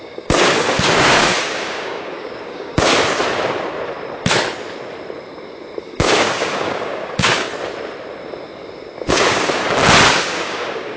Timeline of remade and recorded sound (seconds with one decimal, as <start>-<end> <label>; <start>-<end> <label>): 0.0-2.9 remade; 2.9-5.8 recorded; 5.8-7.5 remade; 7.5-9.1 recorded; 9.1-9.6 remade; 9.6-10.1 recorded; 10.1-11.0 remade